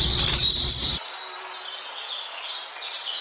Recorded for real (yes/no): yes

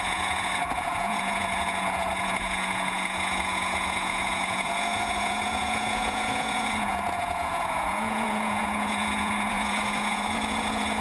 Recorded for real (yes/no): no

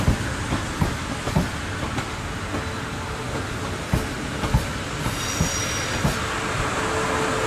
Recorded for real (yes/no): yes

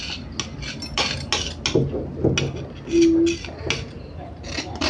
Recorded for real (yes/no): yes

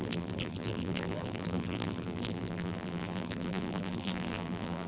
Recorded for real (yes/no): no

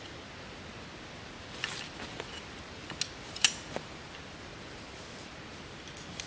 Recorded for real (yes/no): yes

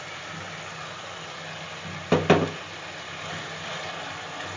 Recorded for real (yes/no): yes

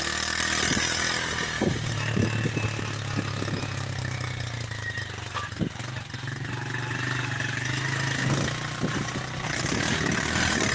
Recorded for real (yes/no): yes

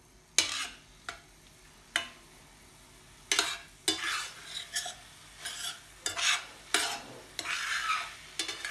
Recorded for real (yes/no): yes